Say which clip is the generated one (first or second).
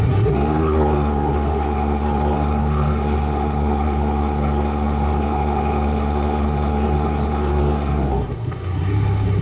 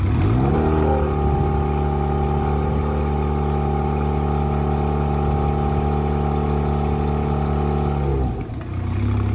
first